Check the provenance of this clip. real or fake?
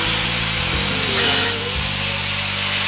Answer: real